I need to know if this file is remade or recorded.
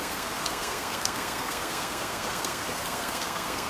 remade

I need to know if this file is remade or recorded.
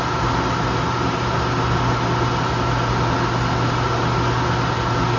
recorded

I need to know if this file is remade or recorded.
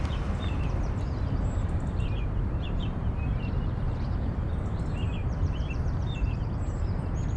remade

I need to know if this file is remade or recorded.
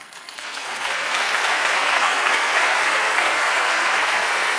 remade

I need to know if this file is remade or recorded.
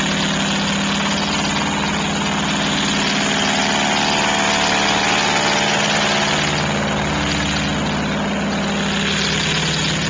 recorded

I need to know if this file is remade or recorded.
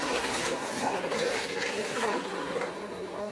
remade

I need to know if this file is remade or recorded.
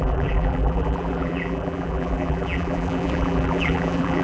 remade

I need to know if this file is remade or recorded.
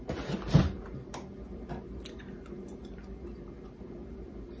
recorded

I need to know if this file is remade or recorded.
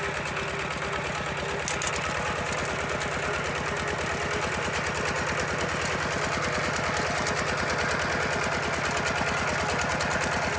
recorded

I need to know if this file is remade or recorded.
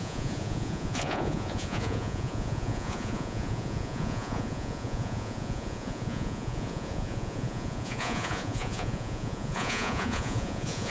remade